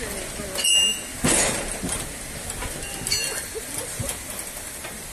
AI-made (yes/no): no